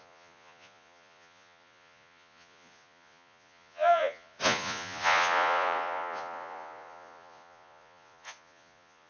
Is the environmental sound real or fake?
fake